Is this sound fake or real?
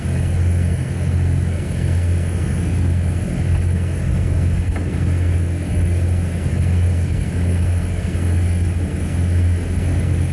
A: fake